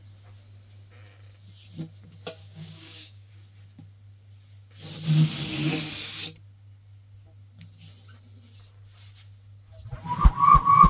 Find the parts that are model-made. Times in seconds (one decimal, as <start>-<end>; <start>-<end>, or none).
2.4-3.3